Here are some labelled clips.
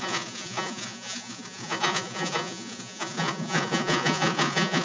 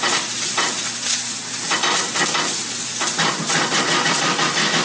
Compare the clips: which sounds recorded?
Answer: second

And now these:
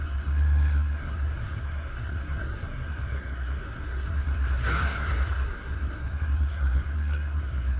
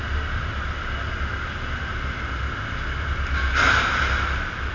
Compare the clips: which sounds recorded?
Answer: second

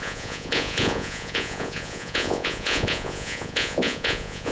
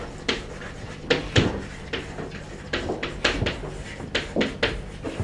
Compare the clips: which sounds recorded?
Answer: second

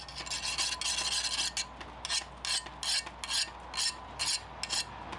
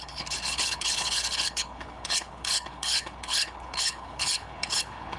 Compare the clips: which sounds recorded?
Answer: first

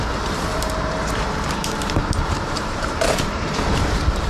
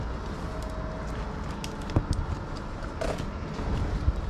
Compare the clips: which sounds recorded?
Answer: second